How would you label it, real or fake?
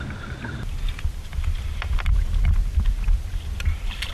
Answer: real